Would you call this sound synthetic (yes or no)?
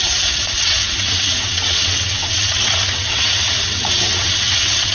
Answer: yes